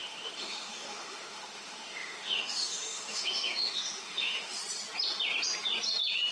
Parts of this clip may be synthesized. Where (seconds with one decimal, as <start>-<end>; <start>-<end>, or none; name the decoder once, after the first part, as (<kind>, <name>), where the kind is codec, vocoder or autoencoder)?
0.0-4.6 (autoencoder, DAC-VAE)